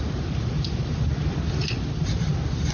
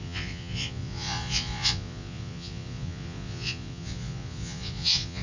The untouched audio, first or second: first